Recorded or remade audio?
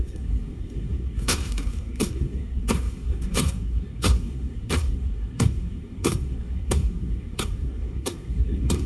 remade